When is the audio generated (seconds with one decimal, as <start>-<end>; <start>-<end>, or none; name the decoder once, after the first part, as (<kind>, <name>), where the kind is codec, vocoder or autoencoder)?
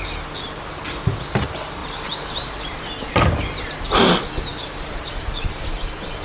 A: 1.8-2.8 (vocoder, BigVGAN v2); 4.5-5.8